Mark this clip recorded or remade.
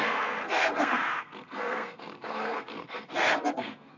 remade